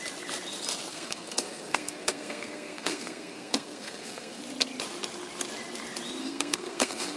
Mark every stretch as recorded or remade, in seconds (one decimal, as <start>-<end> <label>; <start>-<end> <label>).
0.0-0.9 recorded; 0.9-4.4 remade; 4.4-6.2 recorded; 6.2-7.2 remade